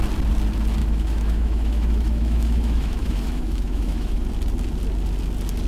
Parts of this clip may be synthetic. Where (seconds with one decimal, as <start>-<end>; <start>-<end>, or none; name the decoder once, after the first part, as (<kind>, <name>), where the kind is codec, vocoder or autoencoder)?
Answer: 0.8-4.2 (autoencoder, DAC-VAE)